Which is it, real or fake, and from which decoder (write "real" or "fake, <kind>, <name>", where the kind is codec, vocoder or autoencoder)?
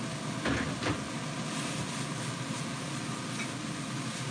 real